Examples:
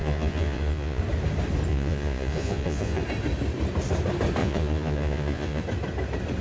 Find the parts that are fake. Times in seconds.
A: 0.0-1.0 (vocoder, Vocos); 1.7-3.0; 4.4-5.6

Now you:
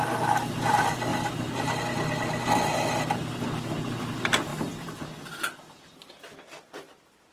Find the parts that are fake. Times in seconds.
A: none

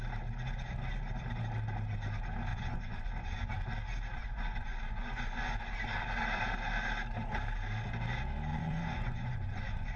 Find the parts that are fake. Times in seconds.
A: 2.5-3.5 (vocoder, Vocos); 4.1-5.6; 8.5-10.0

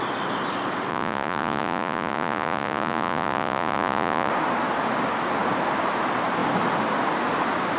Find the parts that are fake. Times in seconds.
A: 0.9-4.3 (vocoder, Vocos)

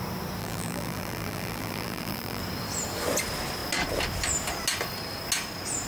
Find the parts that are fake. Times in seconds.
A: 0.4-2.4 (vocoder, BigVGAN v2)

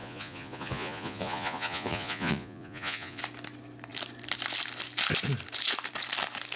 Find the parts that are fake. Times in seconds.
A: 0.0-3.2 (vocoder, Vocos)

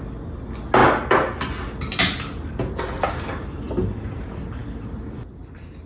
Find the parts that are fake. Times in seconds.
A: none

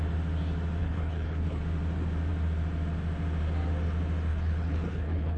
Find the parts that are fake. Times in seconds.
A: 0.8-1.6 (codec, HILCodec); 4.3-5.4